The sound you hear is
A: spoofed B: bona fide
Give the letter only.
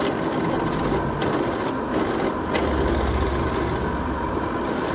B